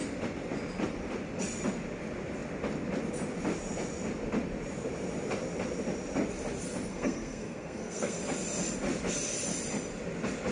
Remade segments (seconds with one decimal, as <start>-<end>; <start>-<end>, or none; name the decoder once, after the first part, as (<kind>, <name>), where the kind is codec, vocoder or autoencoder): 6.9-8.2 (codec, SNAC)